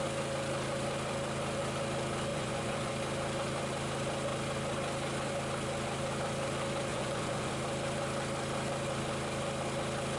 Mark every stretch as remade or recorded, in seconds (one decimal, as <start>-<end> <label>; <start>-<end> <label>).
0.0-2.3 recorded; 2.3-2.9 remade; 2.9-6.9 recorded; 6.9-7.5 remade; 7.5-10.2 recorded